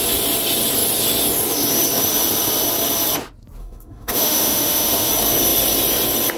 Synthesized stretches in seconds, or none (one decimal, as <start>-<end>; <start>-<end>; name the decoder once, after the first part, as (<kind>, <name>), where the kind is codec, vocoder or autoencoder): 3.6-5.1 (autoencoder, DAC-VAE)